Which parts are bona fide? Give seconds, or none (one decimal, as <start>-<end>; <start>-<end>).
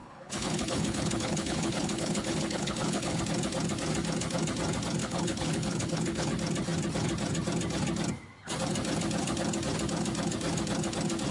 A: 3.2-5.0; 6.3-11.3